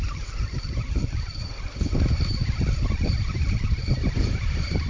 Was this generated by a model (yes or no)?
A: yes